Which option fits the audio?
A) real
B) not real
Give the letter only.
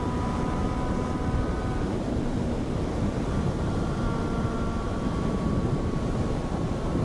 B